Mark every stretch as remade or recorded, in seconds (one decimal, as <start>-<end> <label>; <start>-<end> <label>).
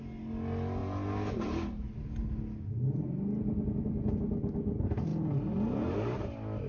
0.0-6.7 recorded